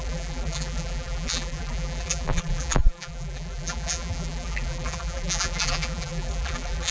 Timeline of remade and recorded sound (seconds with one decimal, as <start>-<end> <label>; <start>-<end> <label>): 0.0-6.9 remade